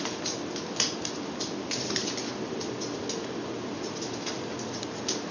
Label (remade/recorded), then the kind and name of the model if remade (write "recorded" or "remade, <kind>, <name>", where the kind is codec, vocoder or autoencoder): recorded